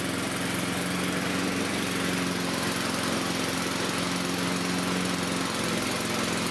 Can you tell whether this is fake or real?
real